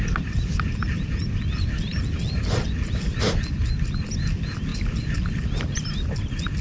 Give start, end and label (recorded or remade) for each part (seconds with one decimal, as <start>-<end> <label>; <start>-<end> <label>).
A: 0.0-6.6 recorded